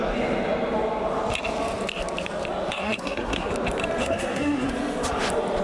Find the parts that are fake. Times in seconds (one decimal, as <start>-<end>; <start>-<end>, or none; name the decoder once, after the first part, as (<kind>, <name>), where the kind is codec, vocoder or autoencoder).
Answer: 2.7-3.5 (codec, SNAC); 4.0-4.7

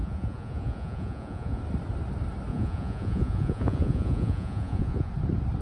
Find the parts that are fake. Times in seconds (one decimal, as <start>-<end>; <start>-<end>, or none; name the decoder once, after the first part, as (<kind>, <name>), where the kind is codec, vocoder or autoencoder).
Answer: 0.0-1.6 (vocoder, Vocos); 2.5-5.1

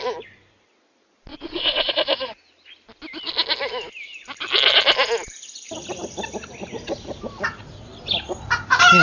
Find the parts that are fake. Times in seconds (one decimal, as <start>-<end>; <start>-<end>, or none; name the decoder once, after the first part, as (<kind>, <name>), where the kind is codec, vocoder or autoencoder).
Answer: 1.3-1.9 (vocoder, Vocos)

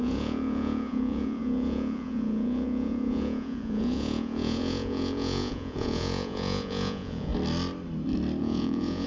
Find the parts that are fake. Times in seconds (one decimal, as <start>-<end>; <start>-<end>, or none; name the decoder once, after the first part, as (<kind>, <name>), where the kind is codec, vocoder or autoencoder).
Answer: 0.0-7.3 (vocoder, Vocos); 8.4-9.1

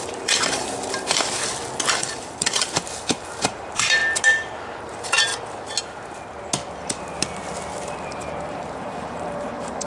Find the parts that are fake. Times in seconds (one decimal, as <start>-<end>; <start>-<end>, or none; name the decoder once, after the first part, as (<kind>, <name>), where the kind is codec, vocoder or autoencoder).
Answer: 0.0-1.4 (vocoder, BigVGAN v2); 2.0-4.0; 4.8-5.3; 8.5-9.9